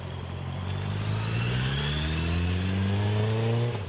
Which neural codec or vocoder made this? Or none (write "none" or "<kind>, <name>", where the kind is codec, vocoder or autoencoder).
none